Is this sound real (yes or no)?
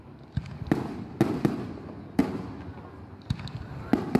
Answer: yes